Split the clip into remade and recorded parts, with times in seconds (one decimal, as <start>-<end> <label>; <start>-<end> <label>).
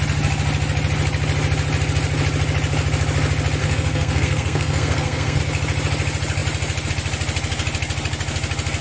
0.0-3.6 recorded; 3.6-5.4 remade; 5.4-8.8 recorded